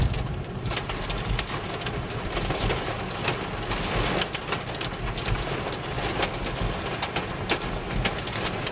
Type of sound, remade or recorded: recorded